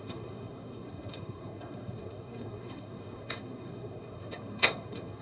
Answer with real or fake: fake